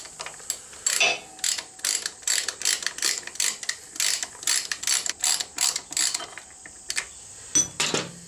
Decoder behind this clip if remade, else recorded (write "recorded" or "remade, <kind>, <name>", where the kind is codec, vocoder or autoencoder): recorded